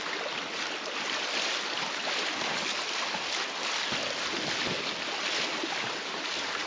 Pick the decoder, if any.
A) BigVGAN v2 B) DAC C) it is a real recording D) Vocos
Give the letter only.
C